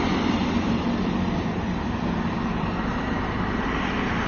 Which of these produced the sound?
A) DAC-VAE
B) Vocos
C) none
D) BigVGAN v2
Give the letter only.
D